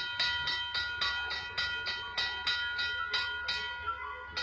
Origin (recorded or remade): recorded